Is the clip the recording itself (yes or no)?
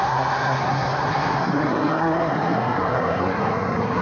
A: no